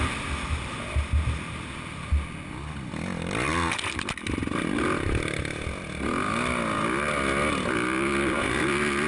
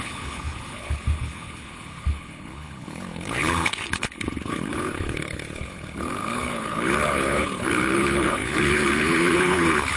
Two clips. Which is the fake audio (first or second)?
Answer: second